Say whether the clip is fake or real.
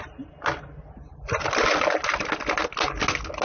real